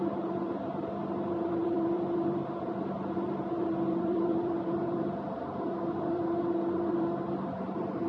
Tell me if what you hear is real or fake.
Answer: fake